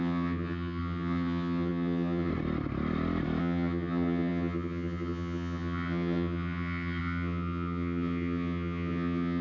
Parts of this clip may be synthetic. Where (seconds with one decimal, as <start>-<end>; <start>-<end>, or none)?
0.0-2.3; 3.4-9.4